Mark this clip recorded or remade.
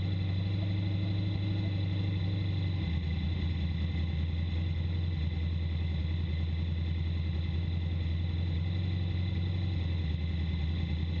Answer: recorded